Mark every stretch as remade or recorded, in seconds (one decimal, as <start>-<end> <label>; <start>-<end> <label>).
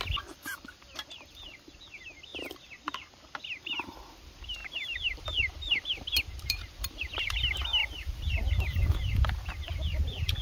0.0-2.3 recorded; 2.3-3.3 remade; 3.3-4.6 recorded; 4.6-7.2 remade; 7.2-7.8 recorded; 7.8-9.5 remade; 9.5-10.4 recorded